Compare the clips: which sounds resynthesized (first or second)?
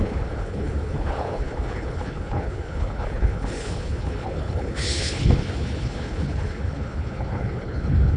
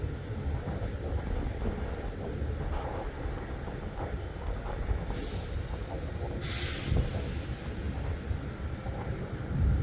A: first